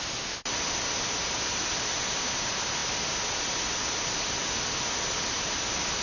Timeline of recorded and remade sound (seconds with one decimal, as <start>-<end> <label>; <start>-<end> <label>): 0.0-6.0 recorded